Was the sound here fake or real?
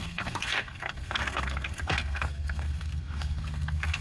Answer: fake